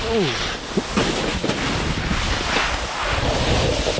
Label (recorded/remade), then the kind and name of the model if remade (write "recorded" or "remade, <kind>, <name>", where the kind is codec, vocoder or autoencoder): recorded